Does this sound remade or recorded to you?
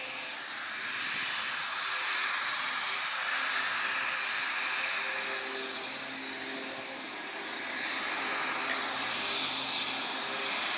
recorded